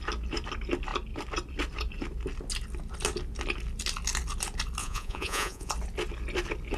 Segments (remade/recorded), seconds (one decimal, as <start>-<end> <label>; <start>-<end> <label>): 0.0-4.8 recorded; 4.8-5.7 remade; 5.7-6.8 recorded